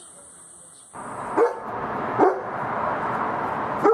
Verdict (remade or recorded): recorded